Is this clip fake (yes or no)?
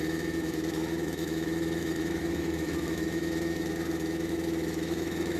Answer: yes